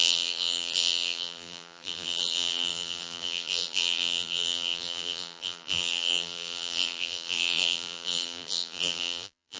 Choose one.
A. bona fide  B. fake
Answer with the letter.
B